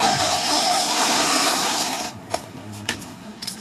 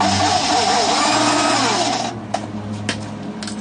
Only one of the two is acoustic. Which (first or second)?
second